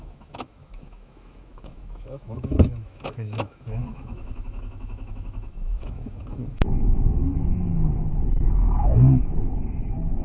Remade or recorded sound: remade